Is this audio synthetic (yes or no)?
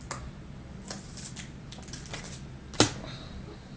no